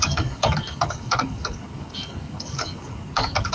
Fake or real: fake